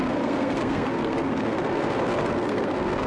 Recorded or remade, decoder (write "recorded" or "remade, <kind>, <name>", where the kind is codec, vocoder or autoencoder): remade, codec, SNAC